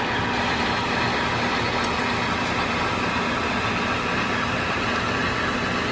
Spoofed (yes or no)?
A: no